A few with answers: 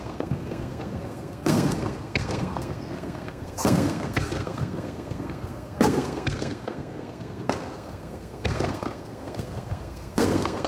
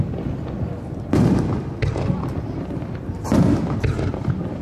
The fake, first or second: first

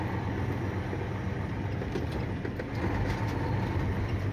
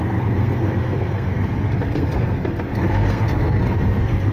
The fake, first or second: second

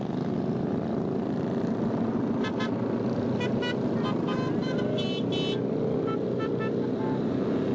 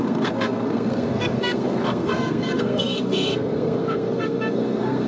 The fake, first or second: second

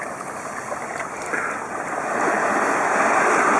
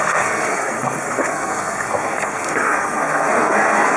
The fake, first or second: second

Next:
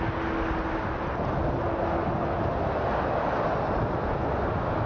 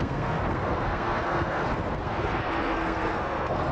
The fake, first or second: second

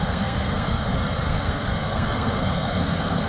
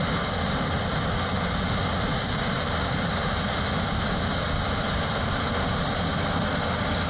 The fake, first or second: first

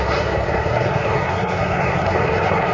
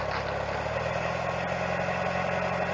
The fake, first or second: first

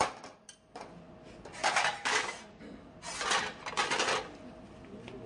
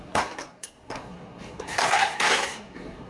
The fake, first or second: second